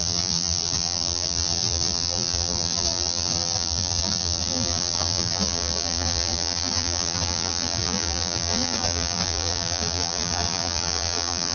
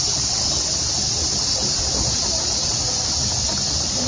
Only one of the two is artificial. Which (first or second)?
first